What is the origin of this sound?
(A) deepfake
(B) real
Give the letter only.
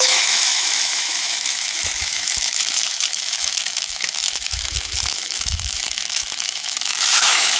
A